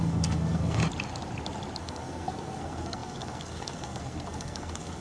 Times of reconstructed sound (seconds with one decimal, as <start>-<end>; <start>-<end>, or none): 0.0-0.8; 1.8-5.0